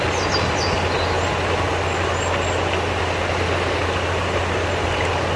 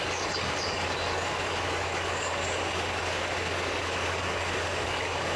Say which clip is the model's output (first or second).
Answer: second